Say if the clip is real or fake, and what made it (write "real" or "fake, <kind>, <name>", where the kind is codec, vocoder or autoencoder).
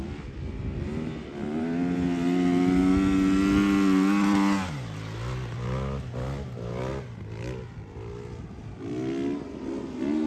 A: real